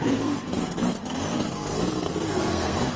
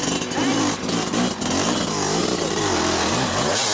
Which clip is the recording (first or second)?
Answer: second